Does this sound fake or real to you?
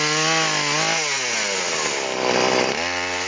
real